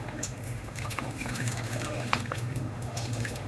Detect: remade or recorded remade